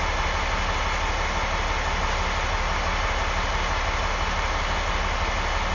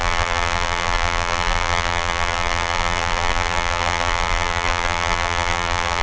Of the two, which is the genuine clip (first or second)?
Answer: first